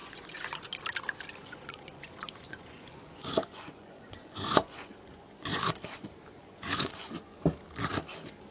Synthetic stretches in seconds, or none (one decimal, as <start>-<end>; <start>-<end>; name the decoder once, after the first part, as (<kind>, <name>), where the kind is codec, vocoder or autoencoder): 0.0-0.6 (vocoder, Vocos); 1.4-5.6; 6.4-7.4

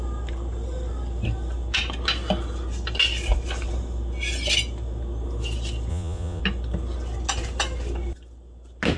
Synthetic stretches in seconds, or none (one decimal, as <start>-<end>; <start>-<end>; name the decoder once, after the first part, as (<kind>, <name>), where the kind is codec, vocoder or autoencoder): 5.9-6.4 (vocoder, Vocos)

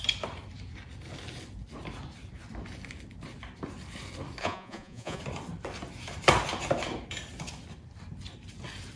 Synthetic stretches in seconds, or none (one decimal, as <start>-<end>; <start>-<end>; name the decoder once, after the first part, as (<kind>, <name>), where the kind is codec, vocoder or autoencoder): 4.4-5.2 (vocoder, Vocos)

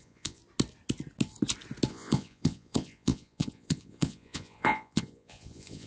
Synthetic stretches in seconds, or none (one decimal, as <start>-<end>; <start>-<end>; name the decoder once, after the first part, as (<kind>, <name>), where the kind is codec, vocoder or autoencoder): 0.0-0.4 (vocoder, Vocos); 1.9-5.9

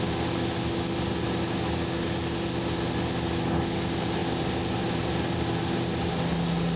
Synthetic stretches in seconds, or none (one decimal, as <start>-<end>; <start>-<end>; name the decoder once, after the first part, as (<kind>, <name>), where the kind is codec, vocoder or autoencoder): none

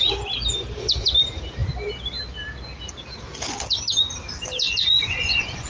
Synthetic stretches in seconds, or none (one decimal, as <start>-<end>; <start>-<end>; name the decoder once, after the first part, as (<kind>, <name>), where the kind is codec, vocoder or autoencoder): 4.9-5.7 (vocoder, Vocos)

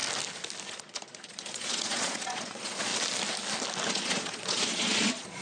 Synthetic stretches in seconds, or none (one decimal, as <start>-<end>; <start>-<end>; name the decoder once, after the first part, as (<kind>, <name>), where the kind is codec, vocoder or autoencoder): 0.7-2.9 (vocoder, Vocos); 3.9-5.4